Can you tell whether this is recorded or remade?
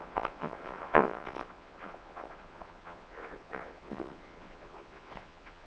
remade